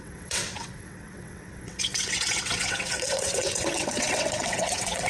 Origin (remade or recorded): remade